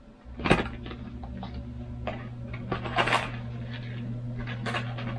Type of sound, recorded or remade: recorded